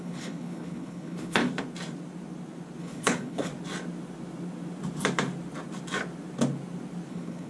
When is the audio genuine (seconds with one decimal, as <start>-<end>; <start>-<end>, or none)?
1.4-2.8; 3.5-7.1